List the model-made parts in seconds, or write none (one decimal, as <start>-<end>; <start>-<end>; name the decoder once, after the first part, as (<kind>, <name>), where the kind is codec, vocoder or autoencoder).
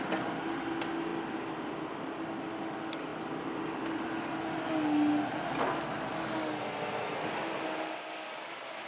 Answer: none